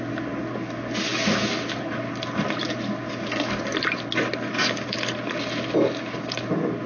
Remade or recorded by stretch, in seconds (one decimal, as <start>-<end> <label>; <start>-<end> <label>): 0.0-6.9 recorded